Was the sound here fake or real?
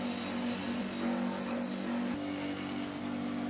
real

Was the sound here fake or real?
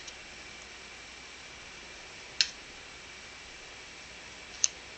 real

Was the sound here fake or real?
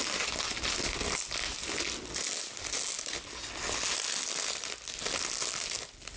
real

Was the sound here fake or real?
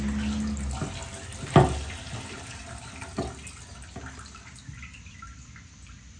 real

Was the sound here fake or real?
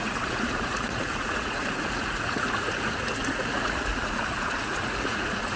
fake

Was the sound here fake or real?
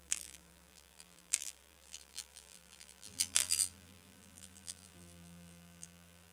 fake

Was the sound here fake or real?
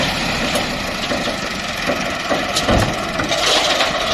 real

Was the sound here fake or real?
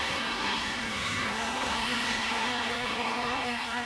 fake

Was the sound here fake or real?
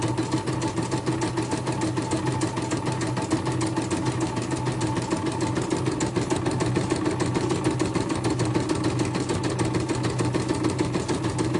real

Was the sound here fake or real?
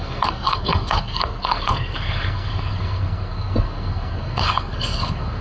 fake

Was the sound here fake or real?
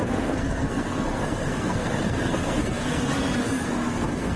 fake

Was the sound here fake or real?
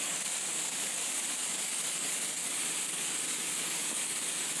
fake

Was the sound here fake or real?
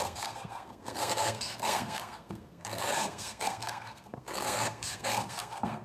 fake